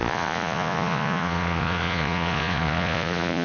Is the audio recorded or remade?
remade